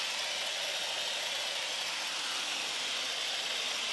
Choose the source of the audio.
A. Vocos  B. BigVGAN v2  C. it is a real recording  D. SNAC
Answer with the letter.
C